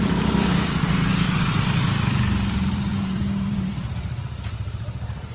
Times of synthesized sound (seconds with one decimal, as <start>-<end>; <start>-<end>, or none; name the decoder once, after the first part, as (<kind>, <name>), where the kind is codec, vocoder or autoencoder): 0.0-1.0 (vocoder, BigVGAN v2); 1.5-5.3